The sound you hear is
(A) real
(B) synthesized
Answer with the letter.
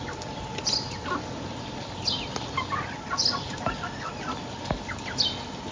A